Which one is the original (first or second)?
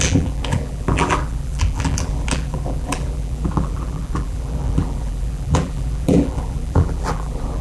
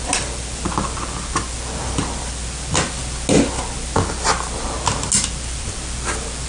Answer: second